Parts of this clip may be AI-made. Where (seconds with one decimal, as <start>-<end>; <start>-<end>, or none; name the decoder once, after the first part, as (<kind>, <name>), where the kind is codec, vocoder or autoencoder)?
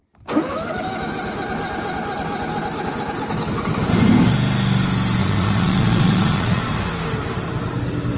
5.2-6.6 (vocoder, Vocos)